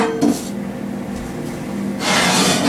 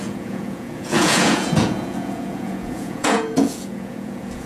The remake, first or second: second